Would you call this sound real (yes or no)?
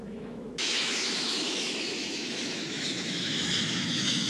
no